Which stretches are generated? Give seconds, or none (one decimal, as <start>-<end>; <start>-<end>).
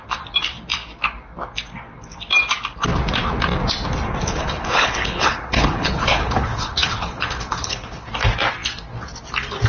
4.2-8.1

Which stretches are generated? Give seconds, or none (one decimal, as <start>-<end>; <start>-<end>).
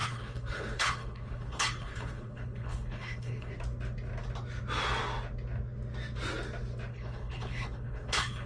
0.0-3.5; 6.9-8.5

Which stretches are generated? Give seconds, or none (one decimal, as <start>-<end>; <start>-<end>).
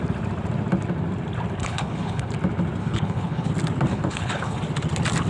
1.6-2.3; 2.8-3.5; 3.9-4.6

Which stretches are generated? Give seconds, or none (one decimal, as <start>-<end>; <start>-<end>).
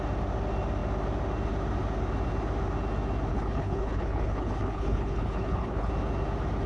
3.3-5.9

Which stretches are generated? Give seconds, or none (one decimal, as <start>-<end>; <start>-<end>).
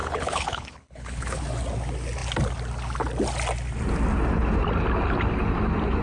0.0-1.4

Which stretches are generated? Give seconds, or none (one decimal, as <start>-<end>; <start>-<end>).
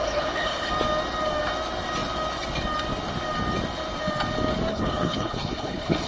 0.0-0.7; 4.7-6.1